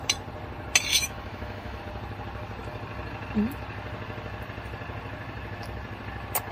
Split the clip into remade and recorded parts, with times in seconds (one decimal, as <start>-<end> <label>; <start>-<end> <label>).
0.0-0.9 recorded; 0.9-1.8 remade; 1.8-6.5 recorded